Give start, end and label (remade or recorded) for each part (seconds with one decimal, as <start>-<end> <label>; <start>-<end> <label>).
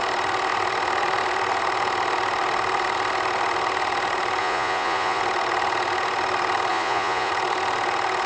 0.0-4.4 recorded; 4.4-5.2 remade; 5.2-6.7 recorded; 6.7-7.3 remade; 7.3-8.3 recorded